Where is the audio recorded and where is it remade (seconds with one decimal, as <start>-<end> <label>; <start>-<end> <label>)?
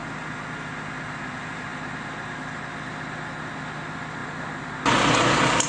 0.0-1.0 recorded; 1.0-1.7 remade; 1.7-3.6 recorded; 3.6-5.7 remade